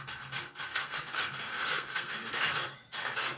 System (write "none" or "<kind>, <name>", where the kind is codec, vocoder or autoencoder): codec, SNAC